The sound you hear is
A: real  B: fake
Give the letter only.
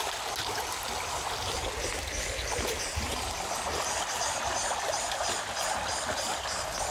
A